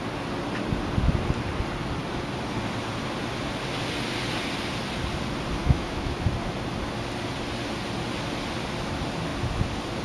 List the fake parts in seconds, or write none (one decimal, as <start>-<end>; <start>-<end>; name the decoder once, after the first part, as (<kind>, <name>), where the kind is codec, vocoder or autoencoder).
5.6-6.2 (autoencoder, DAC-VAE)